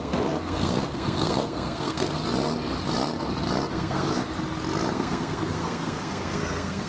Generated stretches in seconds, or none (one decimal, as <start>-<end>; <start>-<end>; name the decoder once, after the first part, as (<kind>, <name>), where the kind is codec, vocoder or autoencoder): 0.0-2.2 (codec, SNAC); 3.7-4.3; 4.9-6.9